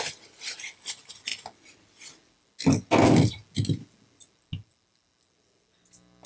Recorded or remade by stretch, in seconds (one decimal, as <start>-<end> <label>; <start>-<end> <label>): 0.0-6.3 recorded